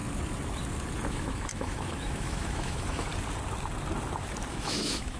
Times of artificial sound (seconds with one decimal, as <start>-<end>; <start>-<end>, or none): 1.1-3.1; 4.5-5.2